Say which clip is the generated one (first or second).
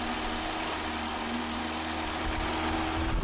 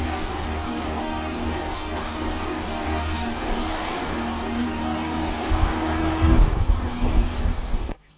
second